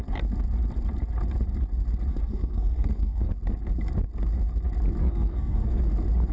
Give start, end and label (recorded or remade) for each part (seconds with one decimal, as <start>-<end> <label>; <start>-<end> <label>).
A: 0.0-2.1 recorded; 2.1-3.3 remade; 3.3-5.0 recorded; 5.0-5.8 remade; 5.8-6.3 recorded